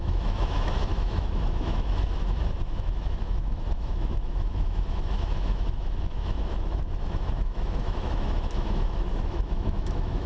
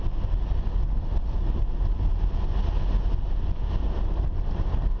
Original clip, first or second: second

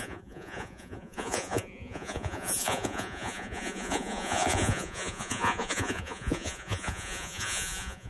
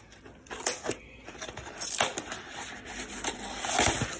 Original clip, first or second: second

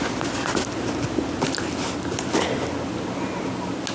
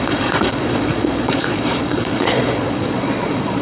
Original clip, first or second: first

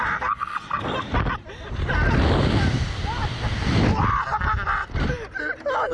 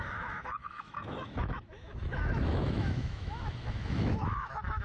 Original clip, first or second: first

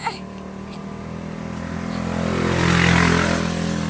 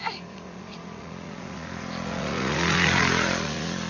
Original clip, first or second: first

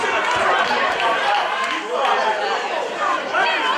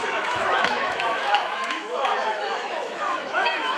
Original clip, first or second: first